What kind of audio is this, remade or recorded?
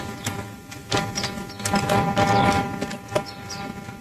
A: recorded